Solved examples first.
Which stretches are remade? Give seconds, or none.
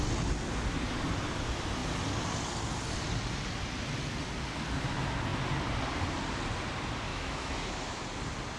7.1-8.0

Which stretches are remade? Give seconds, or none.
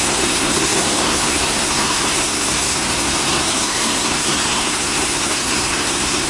0.0-6.3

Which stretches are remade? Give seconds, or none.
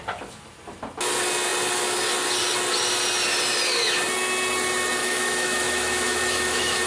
5.0-6.9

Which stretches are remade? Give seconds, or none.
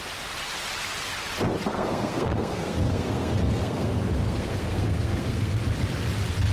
1.7-5.6